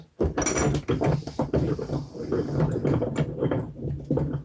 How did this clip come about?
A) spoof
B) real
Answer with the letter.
B